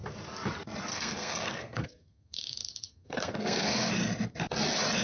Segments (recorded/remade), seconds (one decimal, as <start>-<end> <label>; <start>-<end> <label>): 0.0-0.9 recorded; 0.9-3.9 remade; 3.9-5.0 recorded